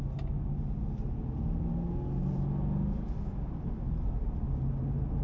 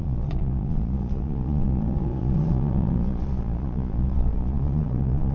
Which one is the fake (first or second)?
second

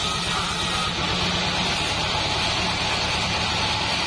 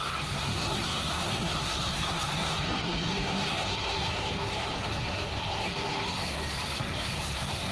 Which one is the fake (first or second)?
second